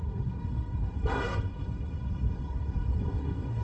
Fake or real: fake